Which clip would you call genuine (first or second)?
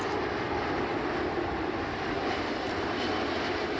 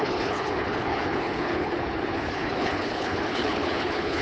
first